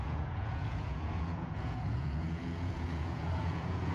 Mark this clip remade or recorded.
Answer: remade